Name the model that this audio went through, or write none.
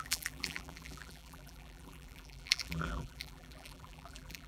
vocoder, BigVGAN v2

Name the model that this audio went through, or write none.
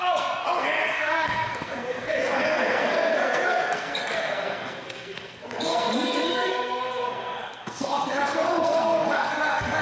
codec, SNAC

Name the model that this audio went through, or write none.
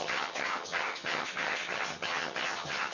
vocoder, HiFi-GAN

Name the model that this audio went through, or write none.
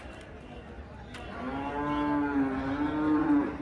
none